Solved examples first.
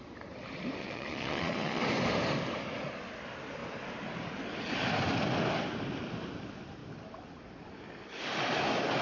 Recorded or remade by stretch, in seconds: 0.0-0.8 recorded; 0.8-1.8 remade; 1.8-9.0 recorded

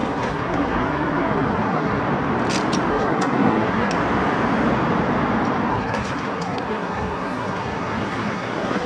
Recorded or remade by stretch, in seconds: 0.0-2.0 remade; 2.0-2.9 recorded; 2.9-3.9 remade; 3.9-5.7 recorded; 5.7-8.9 remade

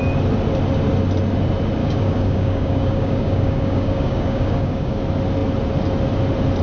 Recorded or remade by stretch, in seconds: 0.0-1.8 recorded; 1.8-5.0 remade; 5.0-6.6 recorded

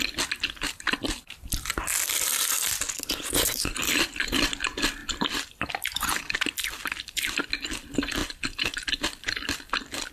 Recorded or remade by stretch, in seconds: 0.0-10.1 recorded

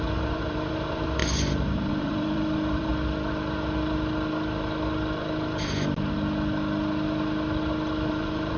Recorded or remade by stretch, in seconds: 0.0-2.9 remade; 2.9-8.1 recorded; 8.1-8.6 remade

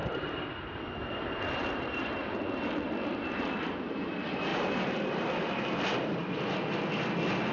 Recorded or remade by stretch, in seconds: 0.0-0.6 remade; 0.6-1.6 recorded; 1.6-4.1 remade; 4.1-4.5 recorded; 4.5-6.2 remade; 6.2-7.5 recorded

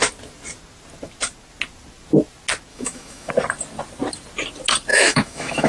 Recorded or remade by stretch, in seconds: 0.0-2.7 recorded; 2.7-3.3 remade; 3.3-4.9 recorded; 4.9-5.7 remade

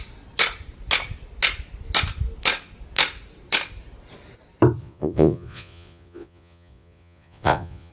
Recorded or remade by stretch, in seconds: 0.0-4.8 recorded; 4.8-7.9 remade